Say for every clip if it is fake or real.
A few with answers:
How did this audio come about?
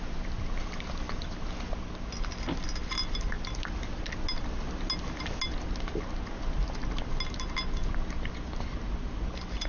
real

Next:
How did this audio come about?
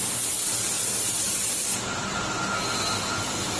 real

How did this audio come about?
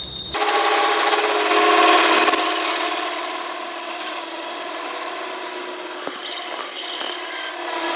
real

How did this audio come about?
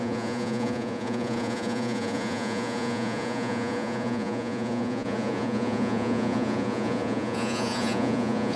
fake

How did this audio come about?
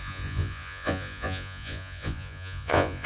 fake